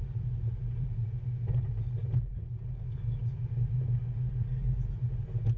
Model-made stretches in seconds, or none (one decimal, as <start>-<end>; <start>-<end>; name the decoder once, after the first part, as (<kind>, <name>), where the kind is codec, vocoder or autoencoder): none